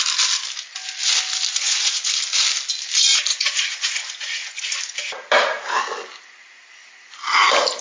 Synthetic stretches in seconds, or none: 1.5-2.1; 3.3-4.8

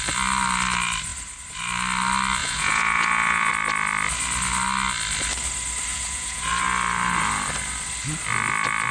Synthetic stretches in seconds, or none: 2.4-3.5; 5.9-6.4

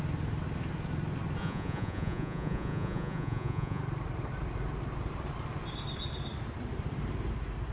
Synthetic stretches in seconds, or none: 1.4-3.8

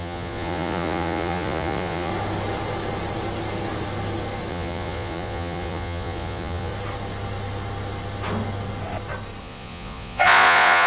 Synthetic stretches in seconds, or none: 0.0-2.1; 4.5-6.7; 9.4-10.9

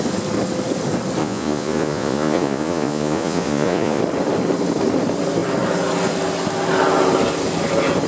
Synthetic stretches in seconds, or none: 1.2-4.0

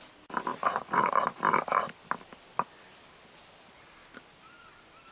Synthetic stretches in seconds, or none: 0.5-1.1